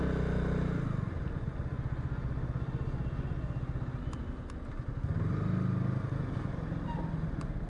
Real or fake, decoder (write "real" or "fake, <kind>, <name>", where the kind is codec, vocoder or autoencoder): real